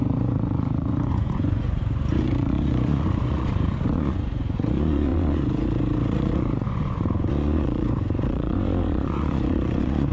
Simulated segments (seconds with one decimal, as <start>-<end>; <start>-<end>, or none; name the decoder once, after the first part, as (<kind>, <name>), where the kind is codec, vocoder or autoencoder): 0.0-10.1 (vocoder, Vocos)

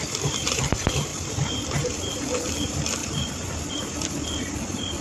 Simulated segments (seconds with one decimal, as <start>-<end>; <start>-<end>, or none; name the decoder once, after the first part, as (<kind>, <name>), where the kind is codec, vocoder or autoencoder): 0.0-5.0 (vocoder, BigVGAN v2)

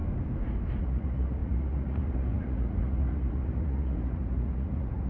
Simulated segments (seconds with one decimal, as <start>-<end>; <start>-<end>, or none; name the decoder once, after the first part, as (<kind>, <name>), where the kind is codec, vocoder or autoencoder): 0.8-5.1 (vocoder, Vocos)